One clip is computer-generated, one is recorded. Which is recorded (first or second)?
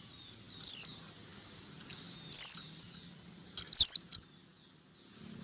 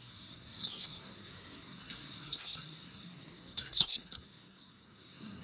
first